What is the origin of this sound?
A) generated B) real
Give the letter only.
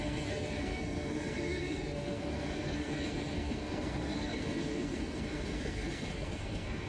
A